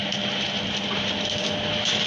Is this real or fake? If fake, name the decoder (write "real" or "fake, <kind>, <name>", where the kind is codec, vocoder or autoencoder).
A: real